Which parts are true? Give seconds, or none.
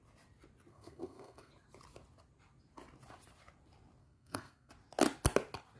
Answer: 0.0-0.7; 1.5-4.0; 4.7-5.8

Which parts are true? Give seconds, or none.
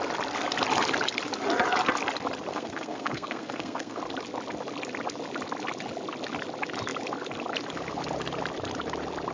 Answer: 0.0-2.5; 4.0-9.3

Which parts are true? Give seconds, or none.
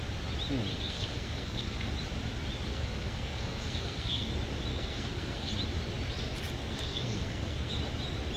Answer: 0.0-0.7; 1.9-2.7; 4.3-4.7; 5.5-6.6; 7.7-8.4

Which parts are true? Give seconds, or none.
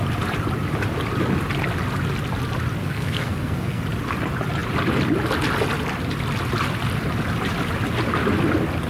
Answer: 0.0-2.8; 3.8-8.9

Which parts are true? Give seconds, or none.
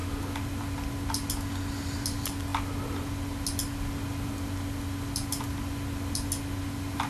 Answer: 0.0-7.1